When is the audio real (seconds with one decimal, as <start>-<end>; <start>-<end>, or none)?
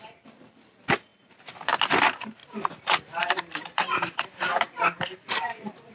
0.0-1.1; 1.8-2.4